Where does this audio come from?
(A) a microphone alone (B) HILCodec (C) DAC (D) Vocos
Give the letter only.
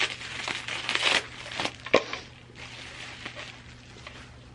A